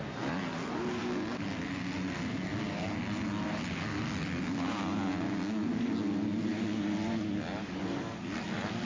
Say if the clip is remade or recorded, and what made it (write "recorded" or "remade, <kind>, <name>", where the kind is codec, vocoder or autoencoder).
recorded